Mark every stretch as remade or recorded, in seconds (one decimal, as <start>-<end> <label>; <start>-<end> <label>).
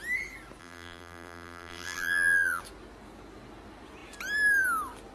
0.0-0.6 recorded; 0.6-2.6 remade; 2.6-5.1 recorded